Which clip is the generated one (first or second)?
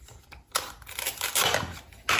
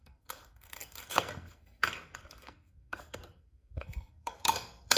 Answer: second